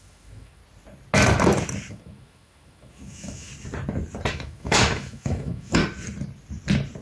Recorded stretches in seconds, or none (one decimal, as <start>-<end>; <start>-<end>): 0.6-1.9; 3.5-4.3; 5.8-7.0